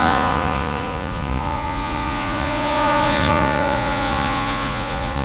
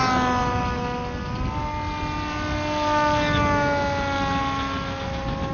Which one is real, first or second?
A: second